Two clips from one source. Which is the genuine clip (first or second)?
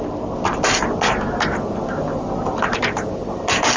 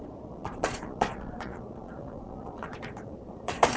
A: first